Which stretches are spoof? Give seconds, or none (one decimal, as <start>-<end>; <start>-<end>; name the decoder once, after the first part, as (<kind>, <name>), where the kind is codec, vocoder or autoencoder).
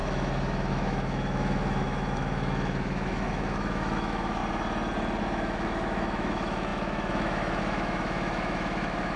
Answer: 0.0-4.4 (autoencoder, DAC-VAE); 5.2-9.2